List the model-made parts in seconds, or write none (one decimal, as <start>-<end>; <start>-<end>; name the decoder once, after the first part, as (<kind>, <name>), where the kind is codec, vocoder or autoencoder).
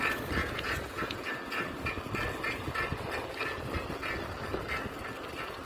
0.4-1.3 (vocoder, Vocos)